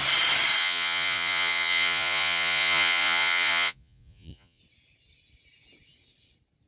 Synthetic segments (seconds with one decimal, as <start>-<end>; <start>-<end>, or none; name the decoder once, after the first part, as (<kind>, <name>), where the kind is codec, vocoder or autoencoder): 0.6-4.6 (vocoder, Vocos)